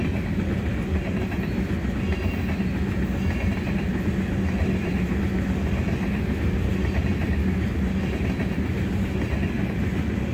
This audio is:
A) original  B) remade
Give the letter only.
A